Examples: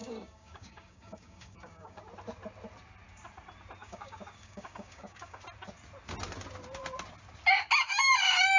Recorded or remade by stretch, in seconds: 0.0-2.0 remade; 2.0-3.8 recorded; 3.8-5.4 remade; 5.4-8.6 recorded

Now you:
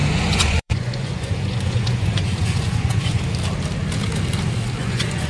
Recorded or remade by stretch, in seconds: 0.0-3.2 remade; 3.2-4.8 recorded; 4.8-5.3 remade